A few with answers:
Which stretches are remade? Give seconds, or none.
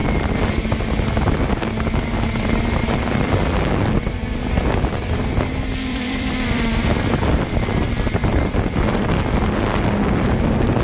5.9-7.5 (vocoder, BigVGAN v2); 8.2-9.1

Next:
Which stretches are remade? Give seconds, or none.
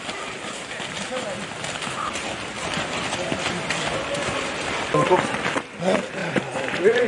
6.2-7.1 (vocoder, BigVGAN v2)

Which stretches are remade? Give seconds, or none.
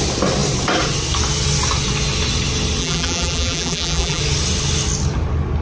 2.8-4.2 (vocoder, BigVGAN v2)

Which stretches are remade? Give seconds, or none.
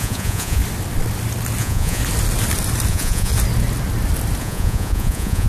0.0-0.6 (vocoder, Vocos); 1.6-2.0; 2.9-3.3; 4.4-5.5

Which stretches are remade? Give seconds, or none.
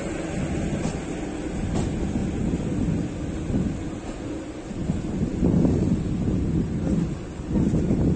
none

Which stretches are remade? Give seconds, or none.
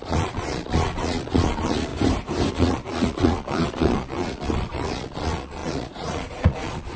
0.0-1.9 (vocoder, Vocos); 2.5-7.0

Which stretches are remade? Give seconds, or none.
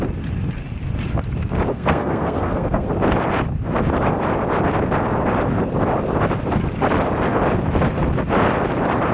1.7-2.9 (codec, SNAC)